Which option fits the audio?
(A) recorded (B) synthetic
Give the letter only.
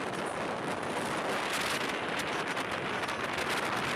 A